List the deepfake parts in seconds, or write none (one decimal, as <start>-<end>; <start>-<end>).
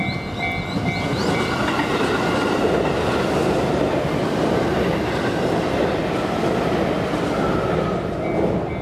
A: none